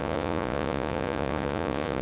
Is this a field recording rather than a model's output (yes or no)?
no